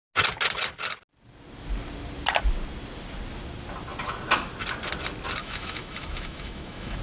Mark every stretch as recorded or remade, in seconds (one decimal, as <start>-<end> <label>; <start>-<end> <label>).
0.0-5.4 recorded; 5.4-7.0 remade